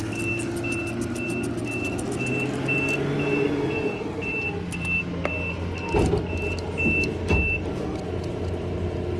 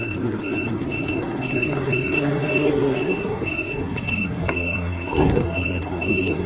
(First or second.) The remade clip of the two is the second